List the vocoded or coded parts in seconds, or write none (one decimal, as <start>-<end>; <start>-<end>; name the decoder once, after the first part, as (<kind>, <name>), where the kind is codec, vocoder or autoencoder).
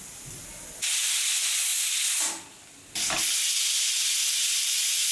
none